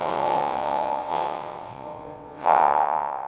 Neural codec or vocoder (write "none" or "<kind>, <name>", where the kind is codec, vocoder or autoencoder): vocoder, WaveNeXt